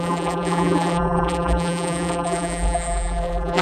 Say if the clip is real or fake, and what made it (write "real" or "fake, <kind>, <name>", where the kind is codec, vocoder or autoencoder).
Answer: fake, vocoder, BigVGAN v2